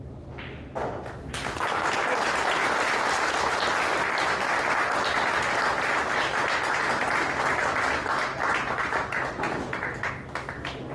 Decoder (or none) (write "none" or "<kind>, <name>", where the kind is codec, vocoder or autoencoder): none